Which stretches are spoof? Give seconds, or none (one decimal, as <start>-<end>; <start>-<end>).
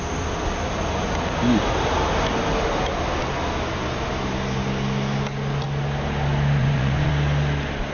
6.6-7.1